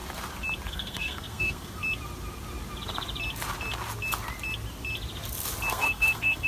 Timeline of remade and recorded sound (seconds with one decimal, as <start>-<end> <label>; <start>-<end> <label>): 0.0-0.7 recorded; 0.7-1.8 remade; 1.8-5.7 recorded; 5.7-6.5 remade